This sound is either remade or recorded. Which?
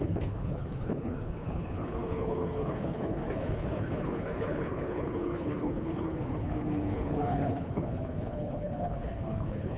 remade